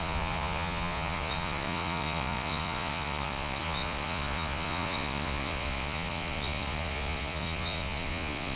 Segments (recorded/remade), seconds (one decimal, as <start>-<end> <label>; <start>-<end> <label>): 0.0-8.6 remade